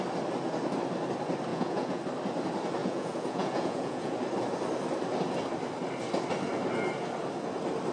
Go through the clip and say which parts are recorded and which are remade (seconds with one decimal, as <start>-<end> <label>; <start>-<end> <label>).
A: 0.0-1.5 recorded; 1.5-2.0 remade; 2.0-2.8 recorded; 2.8-4.1 remade; 4.1-7.9 recorded